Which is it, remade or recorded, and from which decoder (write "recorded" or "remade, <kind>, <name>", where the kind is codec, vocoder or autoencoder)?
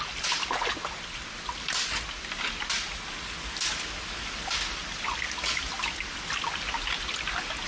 recorded